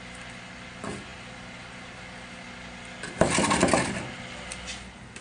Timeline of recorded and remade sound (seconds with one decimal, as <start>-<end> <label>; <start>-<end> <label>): 0.0-5.2 recorded